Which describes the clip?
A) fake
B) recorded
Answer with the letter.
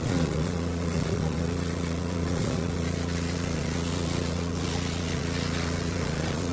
A